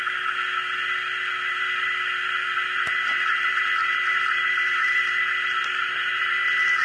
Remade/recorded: recorded